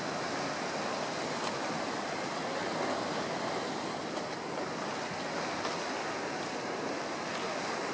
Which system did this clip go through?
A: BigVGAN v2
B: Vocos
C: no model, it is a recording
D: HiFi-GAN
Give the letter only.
C